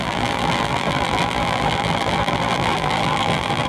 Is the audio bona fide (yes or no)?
no